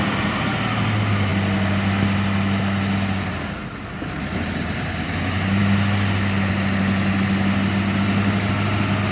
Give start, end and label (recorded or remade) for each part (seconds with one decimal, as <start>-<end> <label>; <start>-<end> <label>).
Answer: 0.0-9.1 recorded